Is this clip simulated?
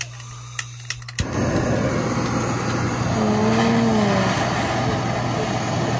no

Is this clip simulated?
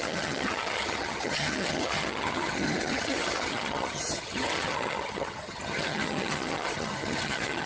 yes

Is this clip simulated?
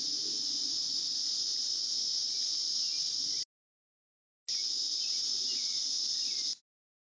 no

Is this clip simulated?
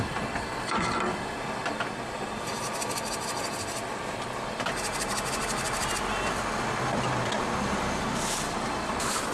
no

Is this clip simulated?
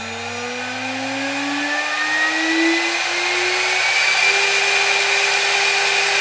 no